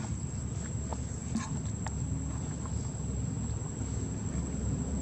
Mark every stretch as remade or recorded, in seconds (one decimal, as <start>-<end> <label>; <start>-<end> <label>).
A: 0.0-5.0 recorded